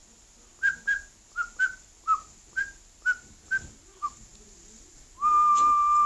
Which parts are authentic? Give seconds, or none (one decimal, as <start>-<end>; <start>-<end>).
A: 0.0-6.1